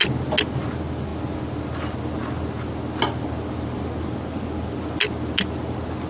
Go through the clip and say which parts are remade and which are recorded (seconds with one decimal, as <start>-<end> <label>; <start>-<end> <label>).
0.0-6.1 recorded